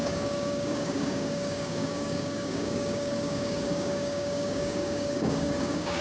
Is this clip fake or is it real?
fake